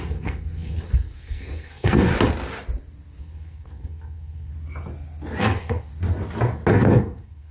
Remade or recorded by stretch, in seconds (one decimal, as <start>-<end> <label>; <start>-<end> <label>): 0.0-2.1 remade; 2.1-3.2 recorded; 3.2-4.5 remade; 4.5-5.4 recorded; 5.4-5.9 remade; 5.9-6.7 recorded; 6.7-7.5 remade